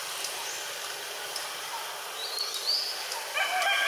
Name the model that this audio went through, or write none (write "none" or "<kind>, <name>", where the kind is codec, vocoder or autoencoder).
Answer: none